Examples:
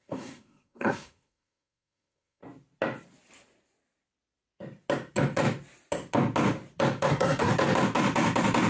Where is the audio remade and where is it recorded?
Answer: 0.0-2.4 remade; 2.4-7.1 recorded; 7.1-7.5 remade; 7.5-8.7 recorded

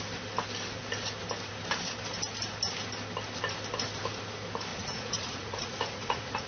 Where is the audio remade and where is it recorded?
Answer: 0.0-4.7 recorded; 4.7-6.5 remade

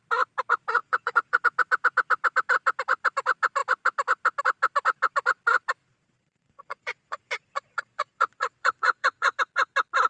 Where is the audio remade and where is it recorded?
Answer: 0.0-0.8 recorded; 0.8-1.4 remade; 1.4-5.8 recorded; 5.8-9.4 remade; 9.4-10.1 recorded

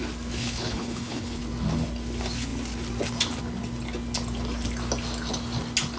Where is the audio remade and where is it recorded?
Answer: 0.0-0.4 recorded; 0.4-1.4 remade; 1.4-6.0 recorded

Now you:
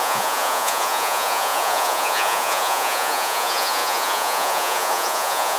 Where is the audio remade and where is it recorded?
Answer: 0.0-5.6 remade

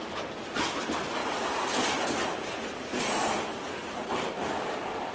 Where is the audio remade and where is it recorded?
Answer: 0.0-1.2 recorded; 1.2-4.3 remade; 4.3-5.1 recorded

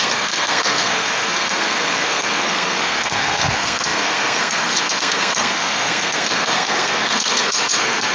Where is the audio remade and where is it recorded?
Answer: 0.0-8.1 remade

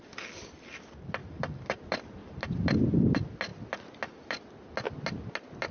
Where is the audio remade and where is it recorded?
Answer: 0.0-1.2 recorded; 1.2-1.8 remade; 1.8-2.2 recorded; 2.2-2.8 remade; 2.8-5.7 recorded